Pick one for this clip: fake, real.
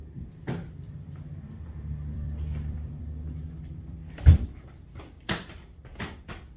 fake